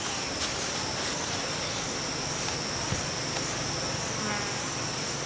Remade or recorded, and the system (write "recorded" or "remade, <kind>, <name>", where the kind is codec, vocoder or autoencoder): recorded